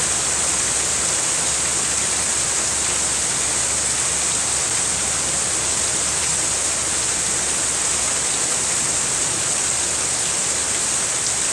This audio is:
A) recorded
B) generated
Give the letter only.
A